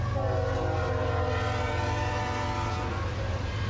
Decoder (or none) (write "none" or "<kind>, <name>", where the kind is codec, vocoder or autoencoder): none